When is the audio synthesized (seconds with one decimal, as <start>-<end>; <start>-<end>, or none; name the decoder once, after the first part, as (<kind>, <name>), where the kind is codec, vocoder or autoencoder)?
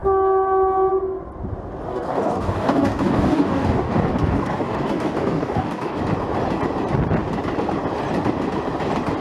1.9-6.0 (codec, DAC)